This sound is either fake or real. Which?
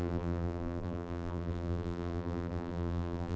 fake